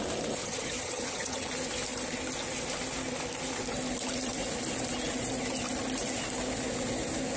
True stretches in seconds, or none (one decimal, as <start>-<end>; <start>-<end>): 0.0-0.4; 1.5-7.4